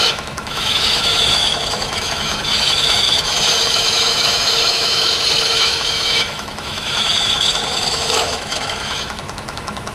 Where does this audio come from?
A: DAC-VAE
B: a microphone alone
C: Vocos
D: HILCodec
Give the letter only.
A